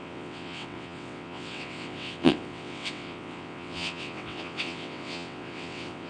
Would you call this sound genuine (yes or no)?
no